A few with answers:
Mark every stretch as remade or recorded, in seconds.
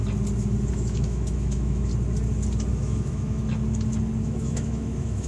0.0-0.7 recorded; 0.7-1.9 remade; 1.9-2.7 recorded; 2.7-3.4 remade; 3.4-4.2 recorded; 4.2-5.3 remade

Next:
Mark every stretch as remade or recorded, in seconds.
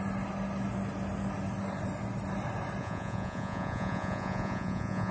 0.0-2.8 recorded; 2.8-5.1 remade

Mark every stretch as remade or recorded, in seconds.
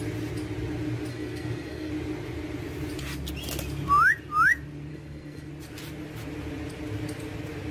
0.0-1.1 recorded; 1.1-1.9 remade; 1.9-4.9 recorded; 4.9-5.5 remade; 5.5-7.7 recorded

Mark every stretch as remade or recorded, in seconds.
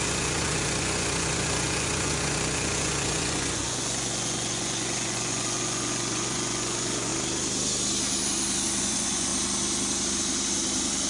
0.0-7.1 remade; 7.1-8.8 recorded; 8.8-9.3 remade; 9.3-11.1 recorded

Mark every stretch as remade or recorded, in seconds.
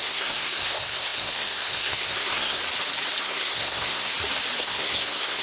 0.0-2.6 remade; 2.6-3.2 recorded; 3.2-4.1 remade; 4.1-4.6 recorded; 4.6-5.4 remade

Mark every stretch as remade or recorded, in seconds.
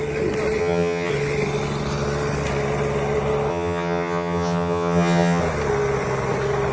0.0-0.6 recorded; 0.6-1.1 remade; 1.1-3.5 recorded; 3.5-5.4 remade; 5.4-6.7 recorded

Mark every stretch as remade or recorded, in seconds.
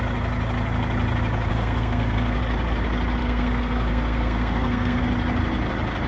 0.0-1.5 recorded; 1.5-2.4 remade; 2.4-3.2 recorded; 3.2-5.0 remade; 5.0-6.1 recorded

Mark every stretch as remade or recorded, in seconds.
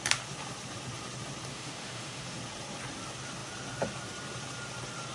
0.0-1.5 recorded; 1.5-2.4 remade; 2.4-5.1 recorded